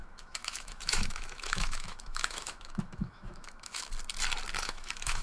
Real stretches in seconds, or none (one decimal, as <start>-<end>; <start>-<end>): 3.9-4.6